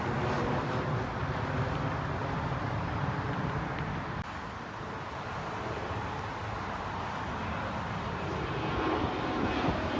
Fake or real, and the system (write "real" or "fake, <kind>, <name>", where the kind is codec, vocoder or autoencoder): real